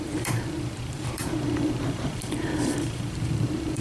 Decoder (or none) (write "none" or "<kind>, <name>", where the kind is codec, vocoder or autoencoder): vocoder, BigVGAN v2